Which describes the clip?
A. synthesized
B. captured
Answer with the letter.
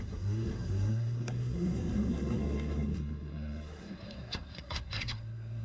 A